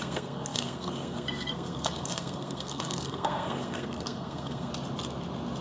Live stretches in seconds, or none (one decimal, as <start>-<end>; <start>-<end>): 4.7-5.6